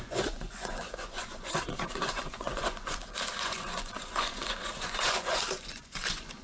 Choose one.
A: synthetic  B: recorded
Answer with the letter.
A